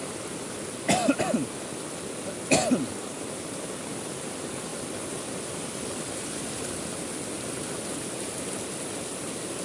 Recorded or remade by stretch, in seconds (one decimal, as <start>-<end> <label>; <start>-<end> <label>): 0.0-9.6 recorded